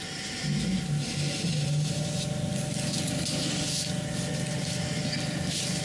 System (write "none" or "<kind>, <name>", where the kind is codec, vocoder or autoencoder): none